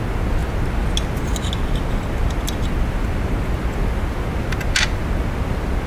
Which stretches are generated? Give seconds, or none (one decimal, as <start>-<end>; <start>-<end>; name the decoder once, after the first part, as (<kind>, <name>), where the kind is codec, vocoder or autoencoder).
none